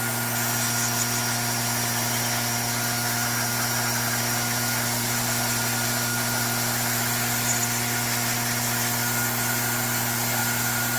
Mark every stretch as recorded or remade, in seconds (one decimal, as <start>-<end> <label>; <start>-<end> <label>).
0.0-11.0 recorded